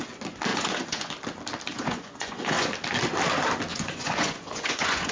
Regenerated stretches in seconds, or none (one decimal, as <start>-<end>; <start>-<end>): 0.5-1.1; 1.7-2.7; 3.7-5.1